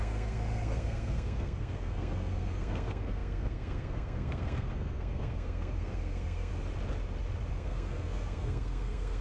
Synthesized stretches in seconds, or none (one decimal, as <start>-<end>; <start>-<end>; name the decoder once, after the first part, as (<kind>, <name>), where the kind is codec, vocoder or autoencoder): 0.0-6.5 (codec, SNAC); 7.5-9.2